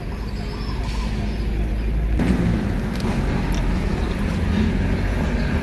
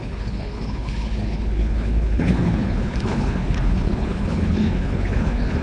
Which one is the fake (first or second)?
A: second